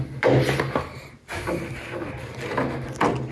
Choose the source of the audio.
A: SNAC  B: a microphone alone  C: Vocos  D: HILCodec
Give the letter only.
B